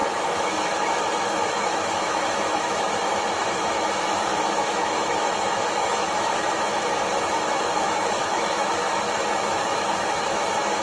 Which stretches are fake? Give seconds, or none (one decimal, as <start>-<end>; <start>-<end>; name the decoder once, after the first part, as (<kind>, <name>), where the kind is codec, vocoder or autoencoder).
0.0-6.7 (autoencoder, DAC-VAE); 7.4-10.8